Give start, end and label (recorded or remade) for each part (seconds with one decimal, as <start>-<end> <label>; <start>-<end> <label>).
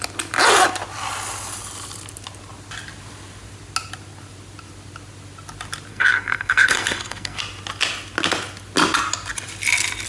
0.0-5.9 recorded; 5.9-7.4 remade; 7.4-10.1 recorded